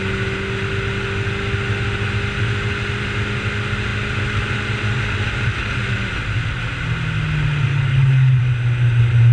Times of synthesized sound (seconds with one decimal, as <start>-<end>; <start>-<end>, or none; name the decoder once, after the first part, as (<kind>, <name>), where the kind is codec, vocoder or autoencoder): 7.7-8.4 (codec, DAC)

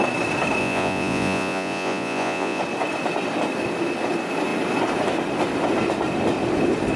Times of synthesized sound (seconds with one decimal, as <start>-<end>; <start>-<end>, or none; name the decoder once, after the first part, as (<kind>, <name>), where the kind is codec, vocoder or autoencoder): 0.6-2.6 (vocoder, Vocos)

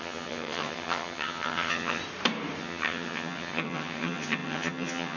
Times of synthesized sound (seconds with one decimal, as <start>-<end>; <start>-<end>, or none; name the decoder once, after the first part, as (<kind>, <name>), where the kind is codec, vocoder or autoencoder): 0.0-2.0 (vocoder, HiFi-GAN); 2.6-5.2

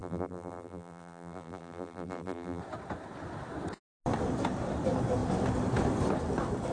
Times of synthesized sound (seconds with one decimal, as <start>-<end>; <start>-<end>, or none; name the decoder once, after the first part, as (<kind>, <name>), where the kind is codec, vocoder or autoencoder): 0.0-2.6 (vocoder, BigVGAN v2)

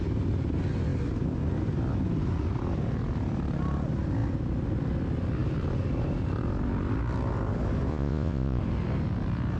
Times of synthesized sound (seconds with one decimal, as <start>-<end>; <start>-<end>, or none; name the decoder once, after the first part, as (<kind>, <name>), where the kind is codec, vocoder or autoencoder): 7.9-8.6 (vocoder, Vocos)

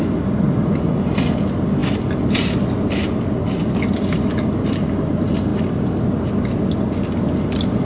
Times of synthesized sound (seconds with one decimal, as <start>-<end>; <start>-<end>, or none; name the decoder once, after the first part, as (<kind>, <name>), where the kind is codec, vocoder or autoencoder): none

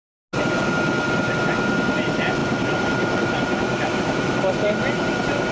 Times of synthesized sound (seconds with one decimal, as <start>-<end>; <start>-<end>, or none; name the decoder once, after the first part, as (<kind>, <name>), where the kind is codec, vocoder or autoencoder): none

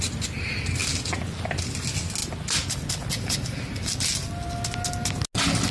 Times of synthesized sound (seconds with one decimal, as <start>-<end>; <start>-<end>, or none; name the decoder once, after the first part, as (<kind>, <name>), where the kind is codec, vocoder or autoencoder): none